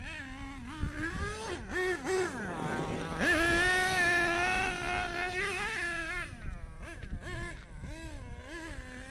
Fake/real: real